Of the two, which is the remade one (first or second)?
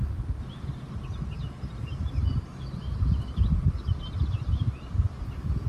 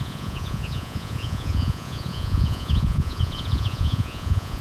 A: second